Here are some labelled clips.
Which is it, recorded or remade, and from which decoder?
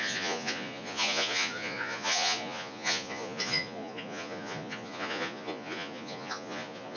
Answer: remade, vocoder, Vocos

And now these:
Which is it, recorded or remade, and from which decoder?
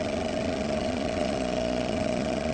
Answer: remade, vocoder, Vocos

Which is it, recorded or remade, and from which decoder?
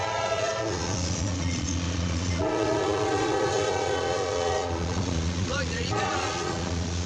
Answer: remade, vocoder, Vocos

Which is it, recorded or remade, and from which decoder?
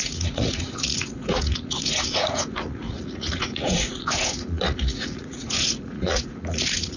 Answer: remade, vocoder, Vocos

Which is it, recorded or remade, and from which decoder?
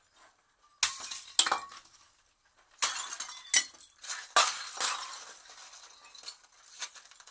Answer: recorded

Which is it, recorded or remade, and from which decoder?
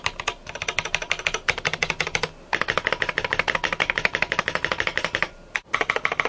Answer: recorded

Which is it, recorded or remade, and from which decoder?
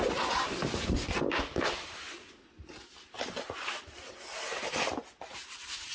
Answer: recorded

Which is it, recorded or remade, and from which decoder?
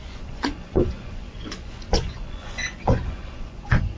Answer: remade, vocoder, Vocos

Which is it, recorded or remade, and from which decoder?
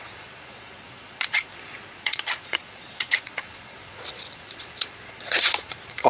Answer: remade, vocoder, Vocos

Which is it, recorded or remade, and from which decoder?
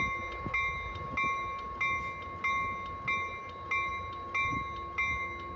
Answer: recorded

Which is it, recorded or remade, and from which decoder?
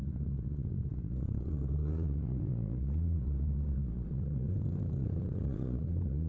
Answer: remade, vocoder, Vocos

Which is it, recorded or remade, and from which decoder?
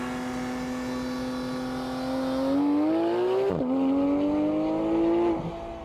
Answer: recorded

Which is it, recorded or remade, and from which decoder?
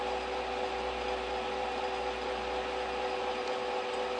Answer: recorded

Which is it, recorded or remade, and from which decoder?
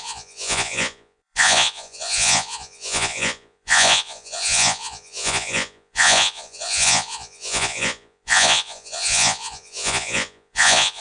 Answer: remade, vocoder, Vocos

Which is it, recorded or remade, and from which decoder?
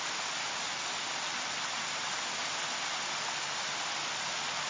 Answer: recorded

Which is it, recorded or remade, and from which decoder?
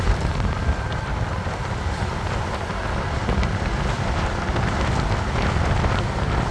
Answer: recorded